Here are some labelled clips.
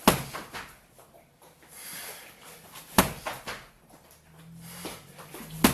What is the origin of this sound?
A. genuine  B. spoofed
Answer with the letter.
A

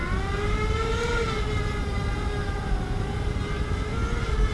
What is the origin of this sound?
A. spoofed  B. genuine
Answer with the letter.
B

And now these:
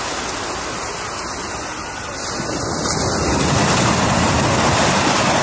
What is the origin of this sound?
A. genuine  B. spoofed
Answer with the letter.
A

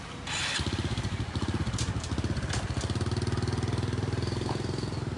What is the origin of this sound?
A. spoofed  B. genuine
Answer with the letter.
B